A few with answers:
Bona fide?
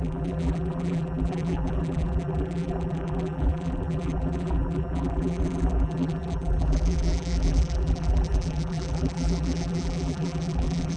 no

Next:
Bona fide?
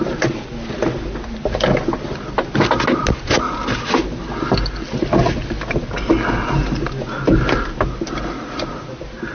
yes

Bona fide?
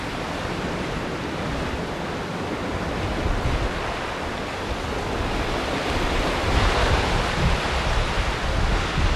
yes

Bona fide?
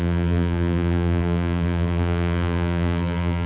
no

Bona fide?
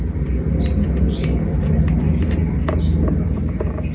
yes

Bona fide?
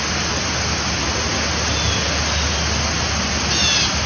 yes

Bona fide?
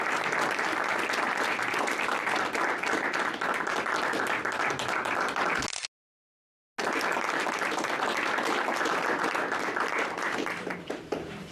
yes